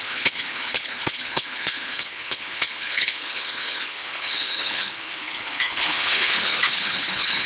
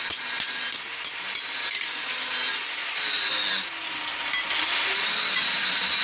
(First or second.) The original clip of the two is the second